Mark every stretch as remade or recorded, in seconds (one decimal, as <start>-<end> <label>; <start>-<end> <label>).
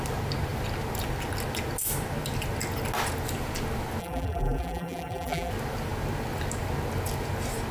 0.0-4.0 recorded; 4.0-5.5 remade; 5.5-7.7 recorded